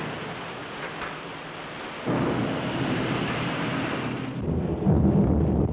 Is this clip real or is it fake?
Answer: real